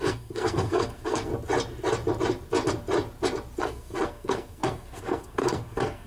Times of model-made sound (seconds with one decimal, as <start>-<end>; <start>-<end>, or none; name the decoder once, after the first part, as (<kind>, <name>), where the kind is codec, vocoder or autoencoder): 0.0-1.3 (codec, SNAC); 3.6-6.1